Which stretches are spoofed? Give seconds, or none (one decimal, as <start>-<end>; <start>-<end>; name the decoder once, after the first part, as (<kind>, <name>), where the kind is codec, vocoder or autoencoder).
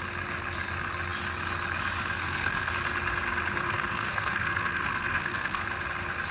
2.2-2.7 (codec, SNAC); 3.6-5.6